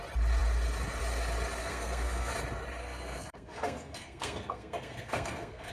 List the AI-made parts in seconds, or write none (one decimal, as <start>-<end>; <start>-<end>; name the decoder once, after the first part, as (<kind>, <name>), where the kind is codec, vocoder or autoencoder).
1.6-2.3 (codec, SNAC); 2.8-5.7